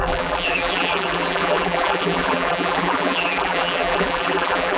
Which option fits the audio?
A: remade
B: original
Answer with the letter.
A